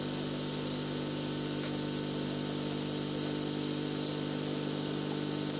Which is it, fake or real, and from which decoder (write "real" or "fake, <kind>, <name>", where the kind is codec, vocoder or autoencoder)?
real